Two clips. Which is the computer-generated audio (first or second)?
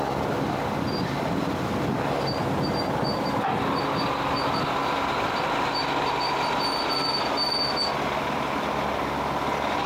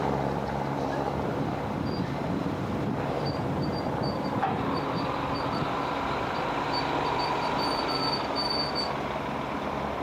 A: second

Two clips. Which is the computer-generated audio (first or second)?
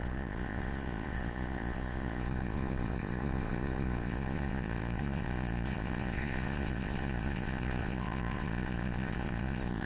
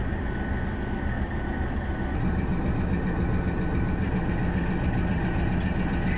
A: first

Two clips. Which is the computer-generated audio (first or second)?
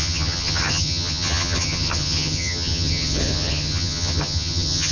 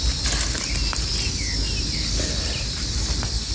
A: first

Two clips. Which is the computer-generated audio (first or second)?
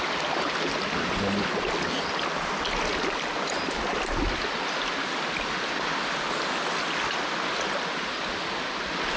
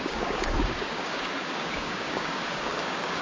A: second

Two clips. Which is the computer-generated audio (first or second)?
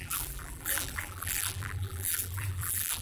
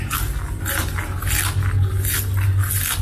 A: first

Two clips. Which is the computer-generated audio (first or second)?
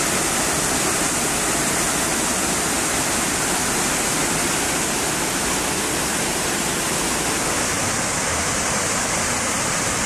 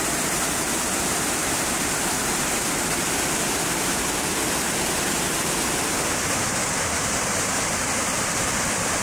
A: second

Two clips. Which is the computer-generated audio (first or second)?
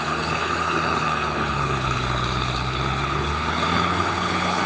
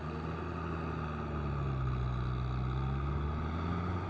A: first